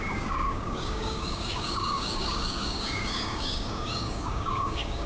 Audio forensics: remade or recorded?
remade